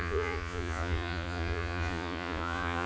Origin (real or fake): fake